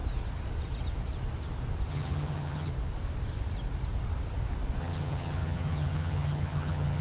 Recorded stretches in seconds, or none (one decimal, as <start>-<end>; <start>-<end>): 0.0-1.9; 2.7-4.8